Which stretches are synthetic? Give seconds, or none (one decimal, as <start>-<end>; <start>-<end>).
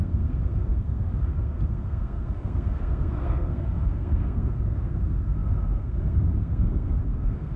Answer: 0.0-7.6